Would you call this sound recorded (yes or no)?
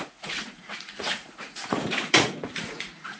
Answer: no